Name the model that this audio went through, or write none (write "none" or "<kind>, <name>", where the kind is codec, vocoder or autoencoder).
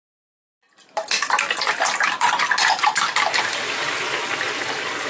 none